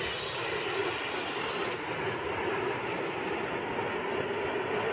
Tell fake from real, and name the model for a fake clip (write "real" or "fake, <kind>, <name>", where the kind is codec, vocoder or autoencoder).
real